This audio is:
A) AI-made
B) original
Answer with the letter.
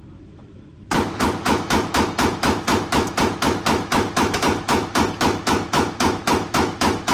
A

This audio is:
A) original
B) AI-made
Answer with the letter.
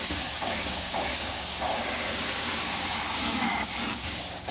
B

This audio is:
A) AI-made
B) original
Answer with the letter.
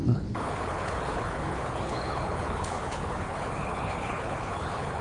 A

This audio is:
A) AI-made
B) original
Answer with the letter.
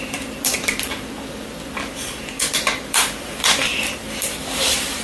A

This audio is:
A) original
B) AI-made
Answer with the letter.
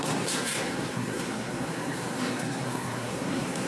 B